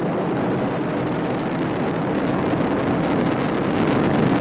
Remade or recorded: recorded